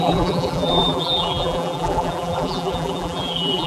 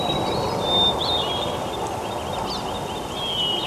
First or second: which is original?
second